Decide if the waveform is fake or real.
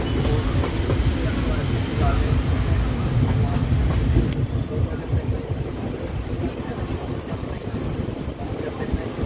real